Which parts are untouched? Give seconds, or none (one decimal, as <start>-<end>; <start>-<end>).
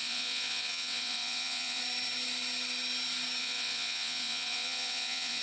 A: 1.8-3.4